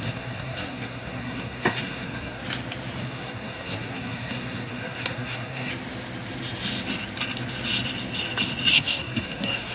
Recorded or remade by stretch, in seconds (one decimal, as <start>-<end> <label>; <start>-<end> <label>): 0.0-2.4 remade; 2.4-3.0 recorded; 3.0-5.7 remade; 5.7-8.7 recorded; 8.7-9.7 remade